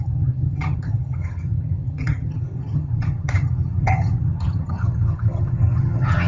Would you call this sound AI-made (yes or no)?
yes